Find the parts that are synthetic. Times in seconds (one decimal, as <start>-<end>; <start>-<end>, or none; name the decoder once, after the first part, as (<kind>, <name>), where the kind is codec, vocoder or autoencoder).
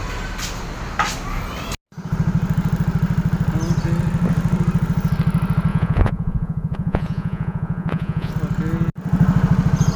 5.7-8.3 (vocoder, Vocos)